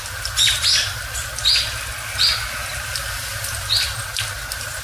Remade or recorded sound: recorded